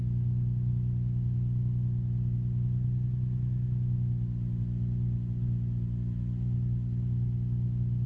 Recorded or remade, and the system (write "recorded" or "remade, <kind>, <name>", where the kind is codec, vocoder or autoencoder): recorded